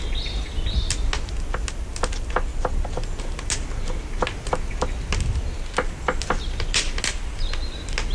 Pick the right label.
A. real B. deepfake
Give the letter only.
A